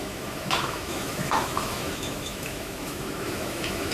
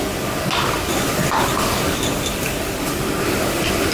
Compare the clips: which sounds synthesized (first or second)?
first